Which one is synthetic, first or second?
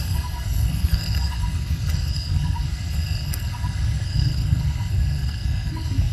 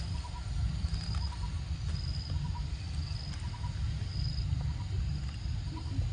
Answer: first